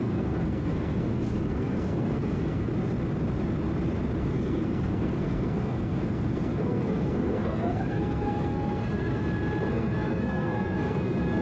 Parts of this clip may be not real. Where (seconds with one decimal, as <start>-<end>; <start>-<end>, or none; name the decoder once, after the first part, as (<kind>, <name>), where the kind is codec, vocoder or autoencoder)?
0.0-2.7 (codec, SNAC); 4.2-9.2; 9.7-11.4